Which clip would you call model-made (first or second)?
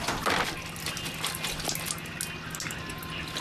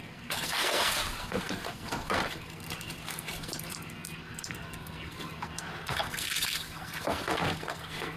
second